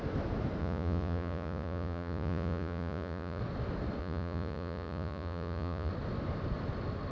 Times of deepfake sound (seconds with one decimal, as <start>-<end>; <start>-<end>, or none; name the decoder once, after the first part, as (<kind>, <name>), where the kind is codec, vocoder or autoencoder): 0.6-3.4 (vocoder, Vocos); 4.0-5.9